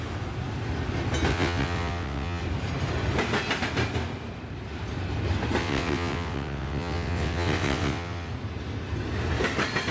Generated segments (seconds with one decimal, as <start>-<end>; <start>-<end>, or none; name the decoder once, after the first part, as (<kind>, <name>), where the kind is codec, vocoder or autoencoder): 1.3-2.4 (vocoder, WaveNeXt); 5.6-8.3